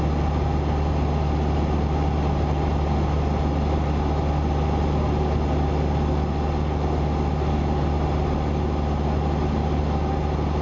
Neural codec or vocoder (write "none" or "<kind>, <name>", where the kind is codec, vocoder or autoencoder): none